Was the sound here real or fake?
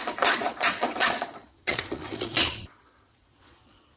fake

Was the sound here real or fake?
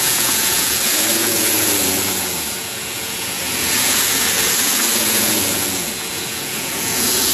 fake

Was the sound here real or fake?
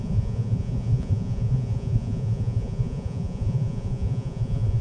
fake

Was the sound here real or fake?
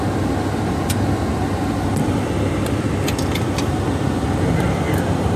real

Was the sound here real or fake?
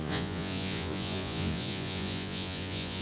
fake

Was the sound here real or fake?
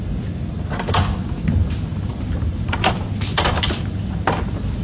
real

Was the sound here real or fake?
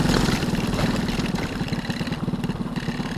real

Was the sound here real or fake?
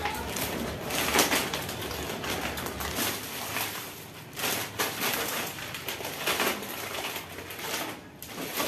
real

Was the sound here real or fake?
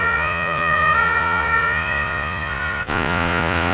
fake